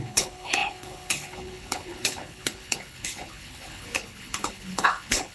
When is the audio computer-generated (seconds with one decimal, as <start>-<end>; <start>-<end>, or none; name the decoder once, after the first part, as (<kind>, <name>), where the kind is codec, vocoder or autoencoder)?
0.0-5.3 (codec, HILCodec)